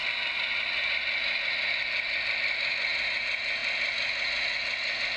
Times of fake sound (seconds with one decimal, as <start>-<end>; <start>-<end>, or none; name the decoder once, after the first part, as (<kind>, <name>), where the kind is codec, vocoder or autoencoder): 0.0-3.1 (vocoder, BigVGAN v2)